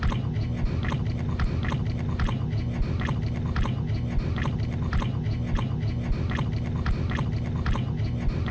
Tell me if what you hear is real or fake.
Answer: real